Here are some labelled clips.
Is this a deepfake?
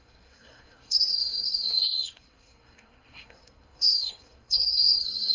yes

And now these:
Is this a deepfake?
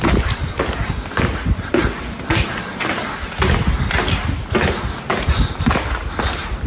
no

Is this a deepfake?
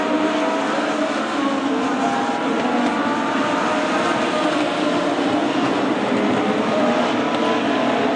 no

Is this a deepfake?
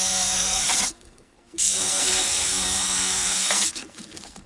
yes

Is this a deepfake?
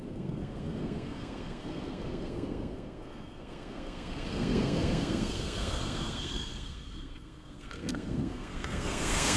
yes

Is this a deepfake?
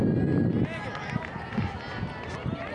no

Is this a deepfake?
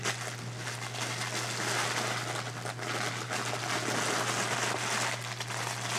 no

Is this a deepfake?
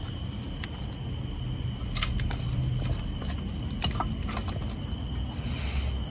no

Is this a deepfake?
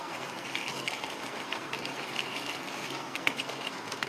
yes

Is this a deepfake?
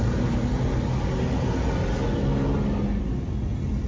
no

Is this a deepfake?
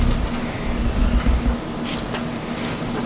no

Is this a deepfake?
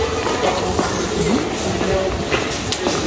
no